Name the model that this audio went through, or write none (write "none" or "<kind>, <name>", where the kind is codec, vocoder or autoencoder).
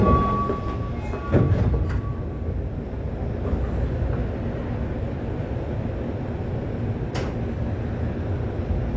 none